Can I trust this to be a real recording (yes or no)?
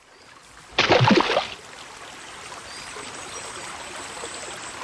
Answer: yes